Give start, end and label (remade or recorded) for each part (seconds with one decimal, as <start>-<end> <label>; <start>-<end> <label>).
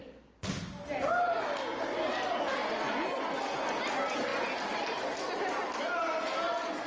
0.0-6.9 recorded